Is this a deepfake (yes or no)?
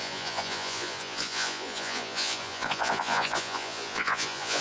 yes